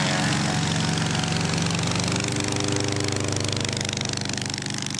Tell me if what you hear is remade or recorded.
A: recorded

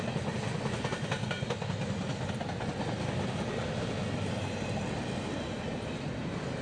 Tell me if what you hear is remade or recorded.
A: recorded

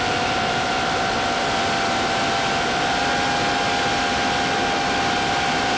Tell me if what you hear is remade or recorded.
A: recorded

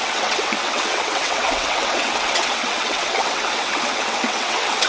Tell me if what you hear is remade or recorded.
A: remade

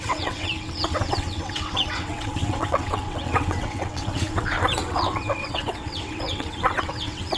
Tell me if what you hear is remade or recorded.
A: remade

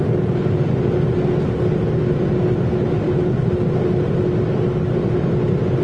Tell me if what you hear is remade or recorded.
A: recorded